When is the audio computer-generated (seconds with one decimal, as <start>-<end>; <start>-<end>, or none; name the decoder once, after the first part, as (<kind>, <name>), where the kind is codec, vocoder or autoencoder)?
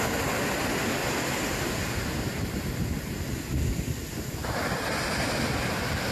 1.0-2.8 (vocoder, BigVGAN v2); 4.4-5.0